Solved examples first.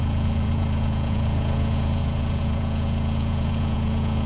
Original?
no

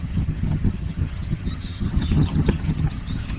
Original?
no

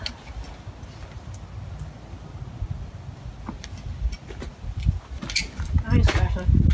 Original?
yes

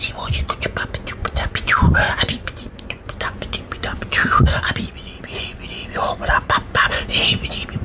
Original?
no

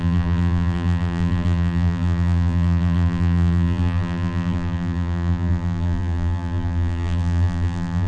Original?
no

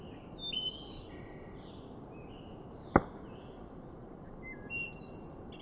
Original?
yes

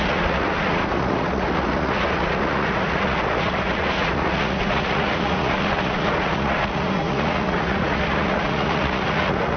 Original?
no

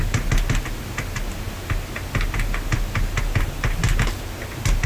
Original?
yes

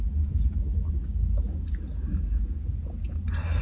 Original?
yes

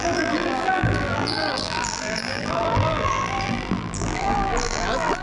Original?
no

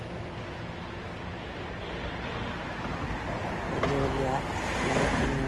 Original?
yes